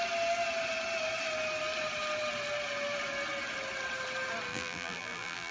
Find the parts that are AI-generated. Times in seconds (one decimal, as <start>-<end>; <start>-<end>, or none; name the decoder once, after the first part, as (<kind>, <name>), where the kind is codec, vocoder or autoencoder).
4.5-5.5 (vocoder, BigVGAN v2)